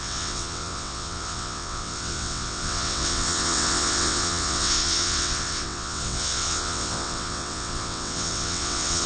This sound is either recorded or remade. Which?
remade